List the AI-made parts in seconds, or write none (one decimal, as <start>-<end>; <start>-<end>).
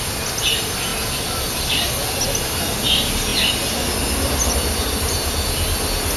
none